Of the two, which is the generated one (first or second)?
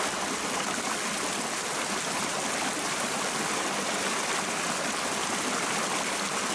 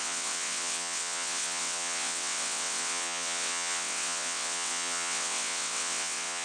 second